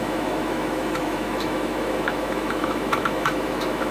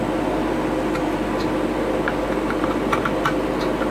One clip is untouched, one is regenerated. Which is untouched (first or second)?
second